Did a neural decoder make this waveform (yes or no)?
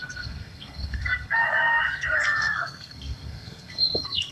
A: yes